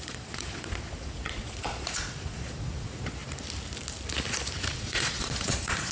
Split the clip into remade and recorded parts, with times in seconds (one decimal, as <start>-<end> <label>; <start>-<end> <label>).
0.0-3.2 remade; 3.2-4.7 recorded; 4.7-5.9 remade